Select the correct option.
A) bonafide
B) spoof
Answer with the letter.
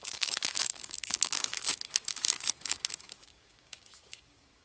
B